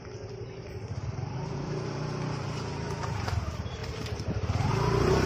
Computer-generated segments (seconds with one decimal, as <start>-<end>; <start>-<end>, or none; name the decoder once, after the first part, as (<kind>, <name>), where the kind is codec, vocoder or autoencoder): 0.0-5.3 (vocoder, BigVGAN v2)